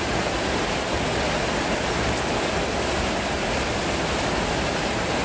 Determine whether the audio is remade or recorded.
recorded